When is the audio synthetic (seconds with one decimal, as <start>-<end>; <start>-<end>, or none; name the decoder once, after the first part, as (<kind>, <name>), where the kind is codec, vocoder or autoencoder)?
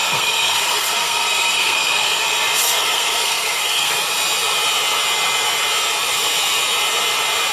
0.0-2.2 (codec, SNAC); 2.6-3.9